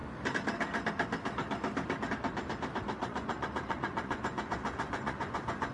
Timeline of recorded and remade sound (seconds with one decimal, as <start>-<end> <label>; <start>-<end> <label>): 0.0-3.0 recorded; 3.0-5.7 remade